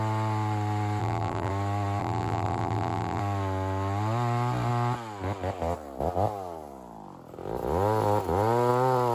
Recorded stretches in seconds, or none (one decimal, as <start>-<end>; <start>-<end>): 0.0-1.0; 1.5-2.0; 3.2-9.1